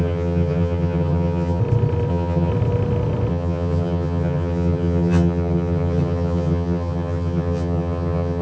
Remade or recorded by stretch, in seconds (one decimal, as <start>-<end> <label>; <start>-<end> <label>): 0.0-1.6 remade; 1.6-2.1 recorded; 2.1-2.5 remade; 2.5-3.3 recorded; 3.3-8.4 remade